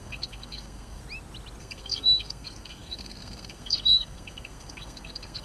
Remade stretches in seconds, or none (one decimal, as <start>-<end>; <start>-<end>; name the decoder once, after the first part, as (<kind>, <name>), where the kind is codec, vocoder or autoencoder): 0.0-1.0 (codec, SNAC); 1.6-5.4